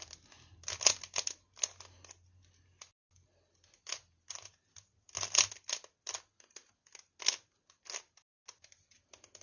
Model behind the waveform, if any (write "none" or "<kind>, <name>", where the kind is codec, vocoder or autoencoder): none